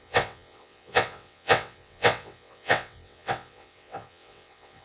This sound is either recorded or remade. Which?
remade